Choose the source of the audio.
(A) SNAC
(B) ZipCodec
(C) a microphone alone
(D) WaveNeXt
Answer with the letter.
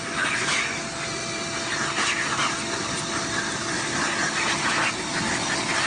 C